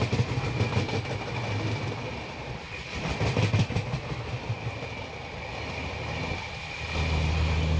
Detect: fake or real real